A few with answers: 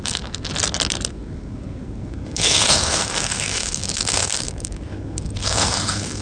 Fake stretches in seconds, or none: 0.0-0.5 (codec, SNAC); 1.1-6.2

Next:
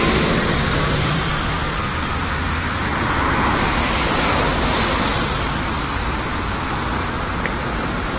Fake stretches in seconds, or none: 0.0-2.9 (vocoder, BigVGAN v2); 4.4-8.2

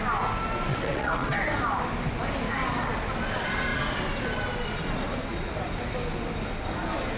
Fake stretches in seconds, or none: 0.7-1.4 (vocoder, WaveNeXt)

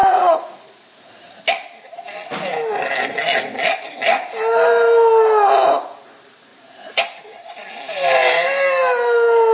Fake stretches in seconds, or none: 0.0-1.3 (vocoder, Vocos)

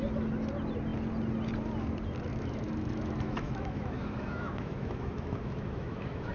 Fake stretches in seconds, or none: 2.3-6.3 (autoencoder, DAC-VAE)

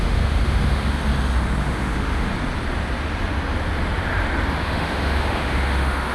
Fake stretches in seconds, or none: 0.0-1.0 (autoencoder, DAC-VAE); 1.6-2.3; 4.6-6.1

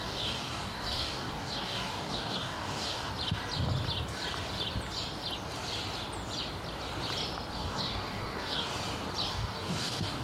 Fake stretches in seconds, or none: 0.0-3.1 (codec, DAC); 7.5-8.7; 9.3-10.2

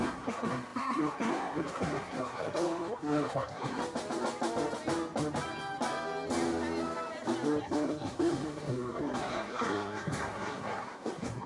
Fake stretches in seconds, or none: 0.0-3.8 (codec, SNAC); 7.6-11.5